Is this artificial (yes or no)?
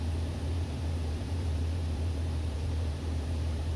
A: yes